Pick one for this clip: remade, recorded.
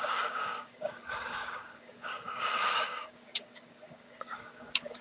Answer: remade